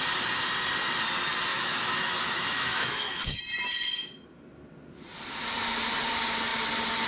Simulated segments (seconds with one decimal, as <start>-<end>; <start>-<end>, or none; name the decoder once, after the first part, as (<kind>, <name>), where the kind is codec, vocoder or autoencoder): 1.5-3.4 (autoencoder, DAC-VAE)